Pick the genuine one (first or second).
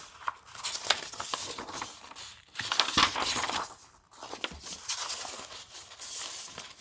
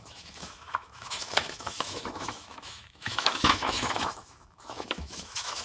first